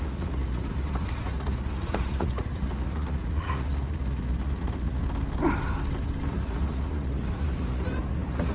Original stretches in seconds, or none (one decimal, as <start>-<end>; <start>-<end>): 5.0-6.3